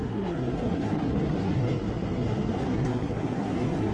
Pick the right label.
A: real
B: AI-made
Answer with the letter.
B